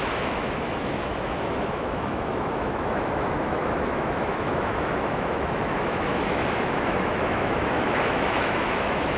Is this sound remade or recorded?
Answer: remade